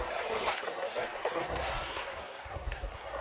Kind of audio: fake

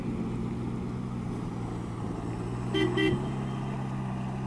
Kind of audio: real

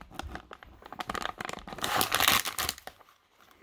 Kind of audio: real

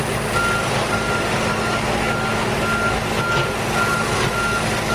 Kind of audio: real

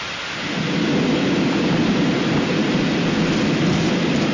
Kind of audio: real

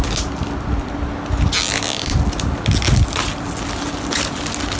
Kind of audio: real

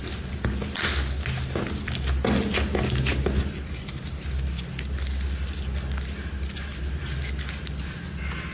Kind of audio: real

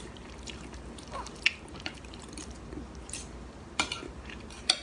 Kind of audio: fake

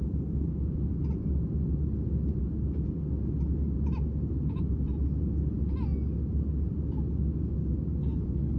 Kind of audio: real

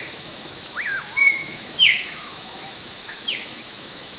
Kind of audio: fake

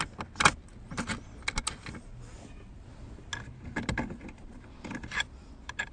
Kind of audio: real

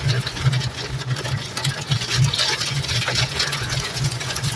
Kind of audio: fake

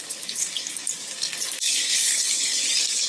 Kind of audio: fake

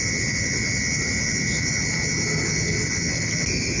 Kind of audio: real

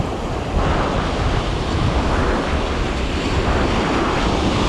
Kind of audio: real